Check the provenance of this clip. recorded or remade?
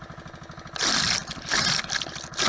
recorded